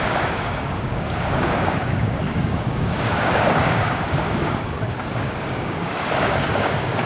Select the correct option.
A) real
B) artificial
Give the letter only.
B